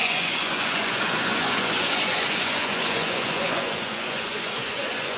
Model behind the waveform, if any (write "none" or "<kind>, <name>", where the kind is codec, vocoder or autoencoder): vocoder, Vocos